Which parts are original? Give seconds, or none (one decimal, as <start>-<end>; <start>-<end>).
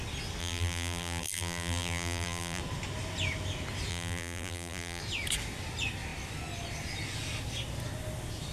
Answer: 0.0-0.4; 2.6-3.9; 5.0-8.5